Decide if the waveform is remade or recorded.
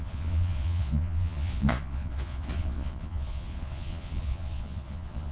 remade